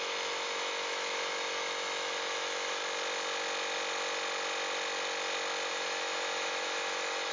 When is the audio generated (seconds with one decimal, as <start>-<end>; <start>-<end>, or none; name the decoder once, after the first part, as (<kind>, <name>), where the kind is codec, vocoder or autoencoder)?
0.0-2.8 (autoencoder, DAC-VAE); 5.7-7.3